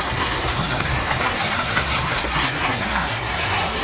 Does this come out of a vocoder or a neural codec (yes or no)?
yes